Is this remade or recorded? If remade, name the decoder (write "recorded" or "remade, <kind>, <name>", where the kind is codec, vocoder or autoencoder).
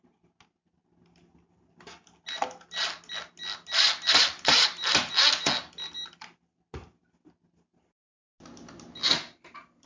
recorded